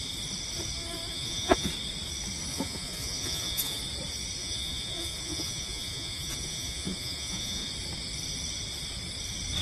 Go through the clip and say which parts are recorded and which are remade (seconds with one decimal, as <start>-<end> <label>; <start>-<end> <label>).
0.0-1.1 recorded; 1.1-1.7 remade; 1.7-2.5 recorded; 2.5-3.8 remade; 3.8-4.4 recorded; 4.4-7.7 remade; 7.7-9.6 recorded